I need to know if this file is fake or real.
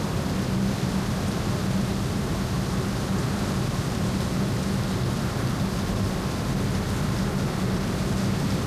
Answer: real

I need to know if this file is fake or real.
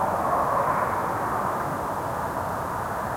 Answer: real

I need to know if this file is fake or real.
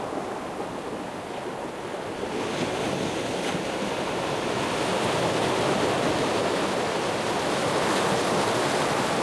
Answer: real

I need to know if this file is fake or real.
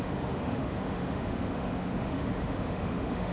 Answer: fake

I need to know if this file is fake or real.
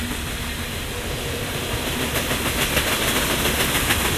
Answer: real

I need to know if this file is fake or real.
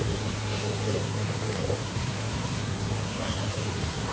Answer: fake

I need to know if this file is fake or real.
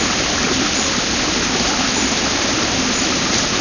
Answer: real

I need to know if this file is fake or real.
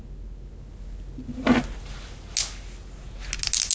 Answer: real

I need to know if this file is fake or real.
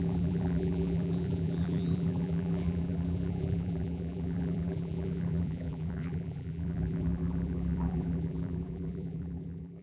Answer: fake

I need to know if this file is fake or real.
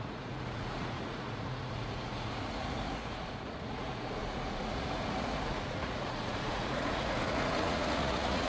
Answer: fake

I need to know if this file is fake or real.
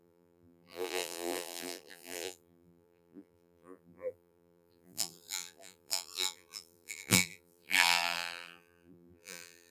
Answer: fake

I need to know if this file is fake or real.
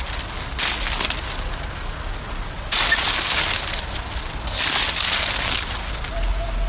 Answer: real